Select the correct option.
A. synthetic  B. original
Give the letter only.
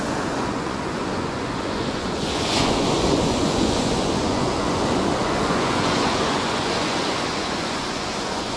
A